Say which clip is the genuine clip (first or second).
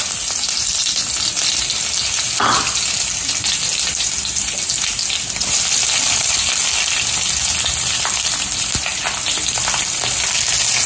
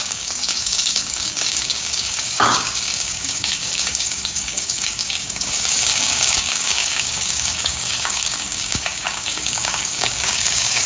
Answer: first